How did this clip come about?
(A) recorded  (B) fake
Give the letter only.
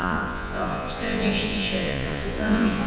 B